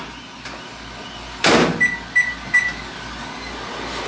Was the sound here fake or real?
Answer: real